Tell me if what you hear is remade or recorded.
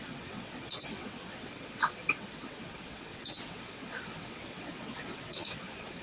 remade